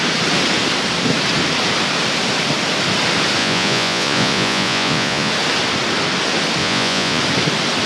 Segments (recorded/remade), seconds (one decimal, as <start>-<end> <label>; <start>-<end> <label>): 0.0-3.4 recorded; 3.4-5.3 remade; 5.3-6.6 recorded; 6.6-7.2 remade; 7.2-7.9 recorded